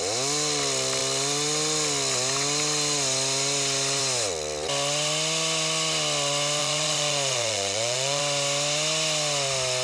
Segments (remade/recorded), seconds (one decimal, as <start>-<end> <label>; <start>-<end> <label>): 0.0-6.6 recorded; 6.6-8.2 remade; 8.2-9.8 recorded